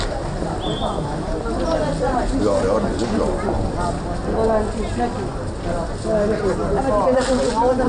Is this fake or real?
real